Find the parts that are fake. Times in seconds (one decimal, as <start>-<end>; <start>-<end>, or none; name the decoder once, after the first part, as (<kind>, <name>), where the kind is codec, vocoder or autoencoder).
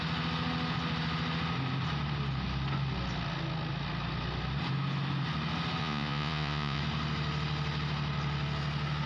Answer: 5.8-6.8 (vocoder, Vocos)